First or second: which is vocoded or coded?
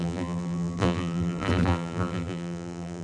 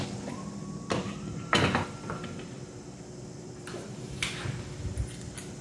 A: first